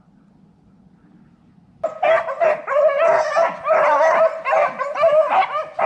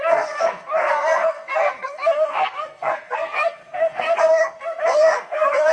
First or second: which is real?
first